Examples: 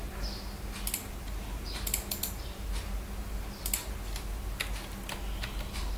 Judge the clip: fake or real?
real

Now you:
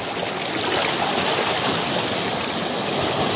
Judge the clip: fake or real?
real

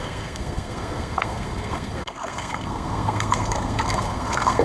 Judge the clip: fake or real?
fake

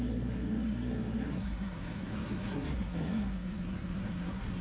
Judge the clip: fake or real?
fake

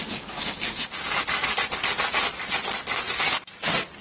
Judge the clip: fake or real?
real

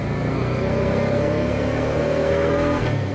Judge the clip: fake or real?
fake